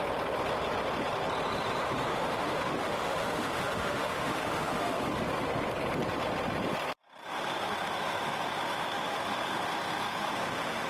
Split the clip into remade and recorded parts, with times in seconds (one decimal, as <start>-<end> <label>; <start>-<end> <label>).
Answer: 0.0-2.1 recorded; 2.1-5.0 remade; 5.0-7.2 recorded; 7.2-10.9 remade